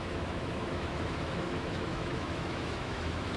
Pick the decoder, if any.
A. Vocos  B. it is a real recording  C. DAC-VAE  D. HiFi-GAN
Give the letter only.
C